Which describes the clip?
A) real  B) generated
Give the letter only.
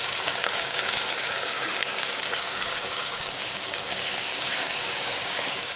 B